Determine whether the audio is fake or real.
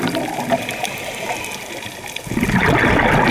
real